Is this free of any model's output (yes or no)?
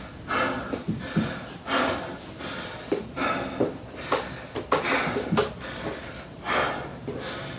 yes